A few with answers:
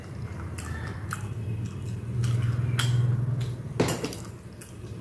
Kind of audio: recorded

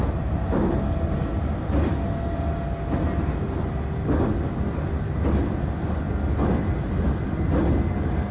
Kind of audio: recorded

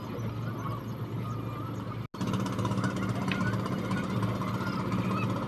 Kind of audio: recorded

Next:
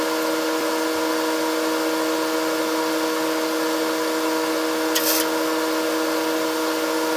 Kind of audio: recorded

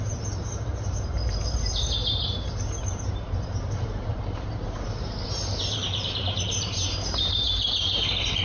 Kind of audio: remade